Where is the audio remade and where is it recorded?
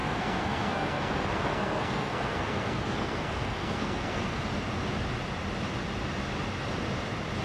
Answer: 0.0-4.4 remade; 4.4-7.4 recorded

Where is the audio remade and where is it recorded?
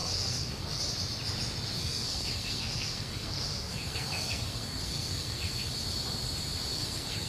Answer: 0.0-0.8 remade; 0.8-1.8 recorded; 1.8-5.7 remade; 5.7-6.7 recorded; 6.7-7.3 remade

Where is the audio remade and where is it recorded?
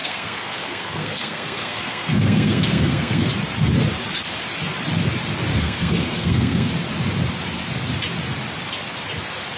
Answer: 0.0-3.3 remade; 3.3-5.5 recorded; 5.5-6.7 remade; 6.7-9.6 recorded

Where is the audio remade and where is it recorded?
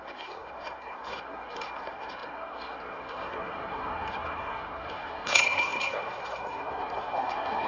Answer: 0.0-7.7 remade